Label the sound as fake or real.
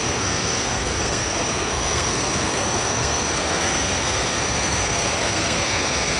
fake